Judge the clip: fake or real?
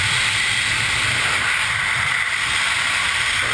real